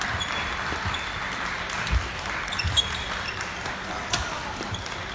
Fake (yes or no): no